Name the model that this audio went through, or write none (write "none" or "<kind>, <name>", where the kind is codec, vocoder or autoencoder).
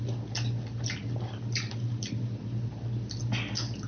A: none